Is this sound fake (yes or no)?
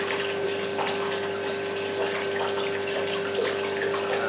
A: no